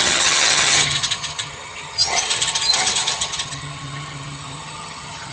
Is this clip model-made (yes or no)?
yes